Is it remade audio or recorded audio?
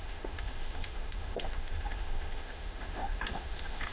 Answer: remade